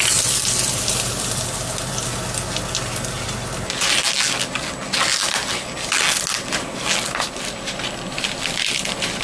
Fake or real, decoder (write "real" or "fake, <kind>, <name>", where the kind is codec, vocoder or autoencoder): real